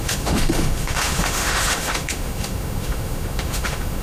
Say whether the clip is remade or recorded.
remade